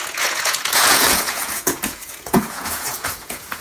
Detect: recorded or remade remade